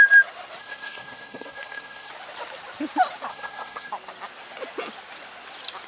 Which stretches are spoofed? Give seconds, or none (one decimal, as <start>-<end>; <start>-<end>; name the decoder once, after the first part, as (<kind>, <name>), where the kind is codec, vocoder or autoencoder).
0.6-2.1 (codec, SNAC); 3.3-3.9